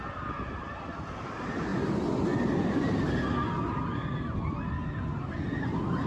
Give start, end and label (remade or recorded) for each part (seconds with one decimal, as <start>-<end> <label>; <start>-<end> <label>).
0.0-6.1 recorded